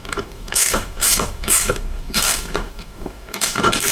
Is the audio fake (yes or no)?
yes